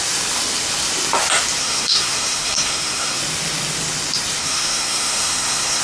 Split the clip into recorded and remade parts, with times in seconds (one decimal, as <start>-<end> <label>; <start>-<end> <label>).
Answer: 0.0-1.6 recorded; 1.6-3.2 remade; 3.2-4.4 recorded; 4.4-5.8 remade